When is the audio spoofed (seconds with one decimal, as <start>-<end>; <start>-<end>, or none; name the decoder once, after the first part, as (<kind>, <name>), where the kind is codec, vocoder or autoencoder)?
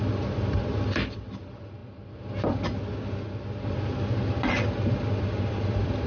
0.0-1.8 (vocoder, BigVGAN v2); 5.5-6.1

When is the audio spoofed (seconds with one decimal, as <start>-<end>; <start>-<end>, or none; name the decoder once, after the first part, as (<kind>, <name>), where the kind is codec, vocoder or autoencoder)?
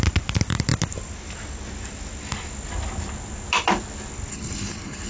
4.3-5.1 (codec, HILCodec)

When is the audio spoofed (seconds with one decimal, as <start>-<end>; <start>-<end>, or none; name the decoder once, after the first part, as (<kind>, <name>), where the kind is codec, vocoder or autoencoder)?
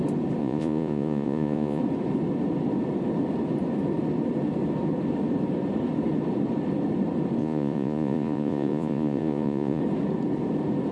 0.4-1.8 (vocoder, Vocos); 7.4-9.8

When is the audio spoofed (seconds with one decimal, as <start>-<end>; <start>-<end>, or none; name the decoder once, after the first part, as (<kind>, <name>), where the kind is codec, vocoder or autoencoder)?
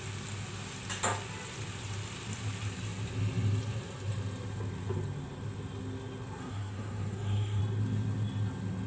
6.4-7.6 (codec, SNAC)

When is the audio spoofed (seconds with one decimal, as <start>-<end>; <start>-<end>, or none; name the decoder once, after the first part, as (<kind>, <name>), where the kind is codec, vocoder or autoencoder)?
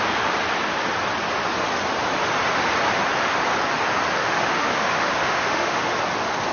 4.2-5.9 (autoencoder, DAC-VAE)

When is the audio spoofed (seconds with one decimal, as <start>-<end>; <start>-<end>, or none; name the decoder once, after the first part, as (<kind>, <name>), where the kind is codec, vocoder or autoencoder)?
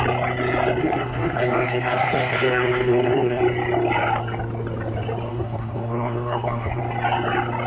0.8-3.4 (codec, SNAC); 5.3-6.8